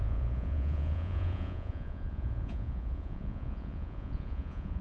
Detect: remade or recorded remade